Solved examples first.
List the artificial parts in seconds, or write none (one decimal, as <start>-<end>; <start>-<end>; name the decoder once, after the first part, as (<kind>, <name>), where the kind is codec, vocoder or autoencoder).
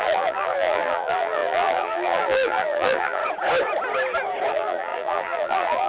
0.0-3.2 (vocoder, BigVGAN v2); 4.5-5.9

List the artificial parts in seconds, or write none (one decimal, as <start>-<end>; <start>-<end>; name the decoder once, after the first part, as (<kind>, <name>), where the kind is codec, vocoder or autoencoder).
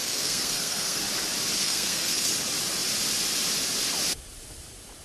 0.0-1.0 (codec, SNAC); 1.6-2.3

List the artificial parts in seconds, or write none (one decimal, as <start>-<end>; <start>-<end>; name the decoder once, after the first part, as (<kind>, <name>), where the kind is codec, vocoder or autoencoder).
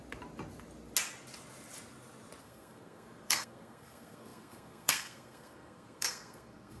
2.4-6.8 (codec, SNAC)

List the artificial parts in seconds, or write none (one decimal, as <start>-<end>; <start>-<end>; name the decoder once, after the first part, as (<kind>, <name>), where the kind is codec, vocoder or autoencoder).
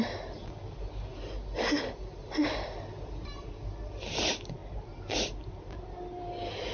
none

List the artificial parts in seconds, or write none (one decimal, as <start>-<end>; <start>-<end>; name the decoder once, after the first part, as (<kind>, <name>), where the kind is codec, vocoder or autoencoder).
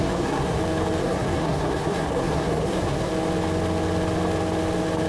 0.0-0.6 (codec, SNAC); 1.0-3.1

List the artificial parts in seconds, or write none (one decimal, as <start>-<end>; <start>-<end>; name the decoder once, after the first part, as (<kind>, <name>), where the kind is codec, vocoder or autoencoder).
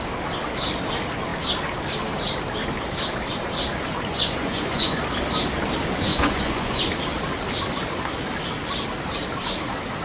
4.1-5.0 (vocoder, Vocos); 6.1-6.8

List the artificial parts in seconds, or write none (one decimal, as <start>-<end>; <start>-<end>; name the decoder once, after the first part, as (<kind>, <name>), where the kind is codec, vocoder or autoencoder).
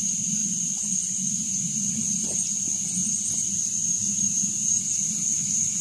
none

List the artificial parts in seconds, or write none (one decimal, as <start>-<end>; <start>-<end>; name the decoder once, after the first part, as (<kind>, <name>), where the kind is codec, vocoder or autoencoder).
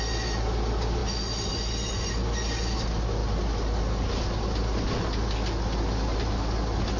none